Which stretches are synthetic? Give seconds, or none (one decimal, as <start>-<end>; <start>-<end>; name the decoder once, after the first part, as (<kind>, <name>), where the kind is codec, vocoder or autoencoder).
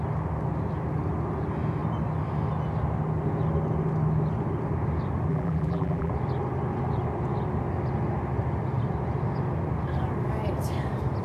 5.3-6.1 (vocoder, BigVGAN v2)